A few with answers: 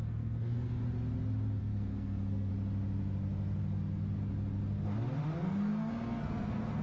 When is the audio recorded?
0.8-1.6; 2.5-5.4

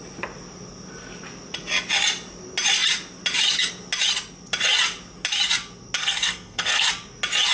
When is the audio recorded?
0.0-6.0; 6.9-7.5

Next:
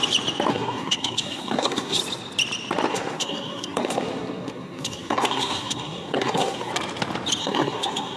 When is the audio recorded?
0.0-0.5; 2.0-2.9; 6.7-7.4